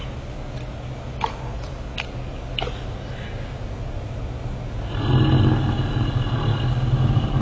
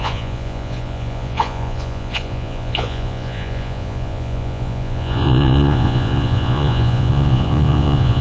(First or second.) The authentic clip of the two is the first